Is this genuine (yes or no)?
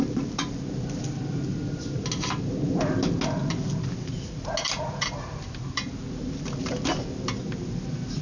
yes